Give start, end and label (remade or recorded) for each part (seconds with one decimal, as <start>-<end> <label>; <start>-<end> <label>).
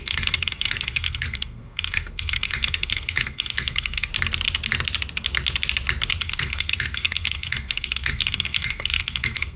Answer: 0.0-4.1 remade; 4.1-6.2 recorded; 6.2-9.6 remade